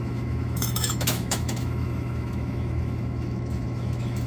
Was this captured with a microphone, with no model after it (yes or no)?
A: no